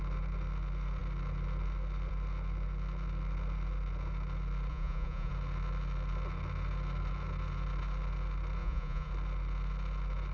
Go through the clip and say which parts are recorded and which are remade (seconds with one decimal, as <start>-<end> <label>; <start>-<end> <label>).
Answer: 0.0-4.7 recorded; 4.7-5.3 remade; 5.3-8.6 recorded; 8.6-9.1 remade; 9.1-10.3 recorded